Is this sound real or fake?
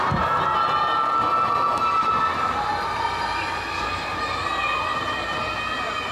real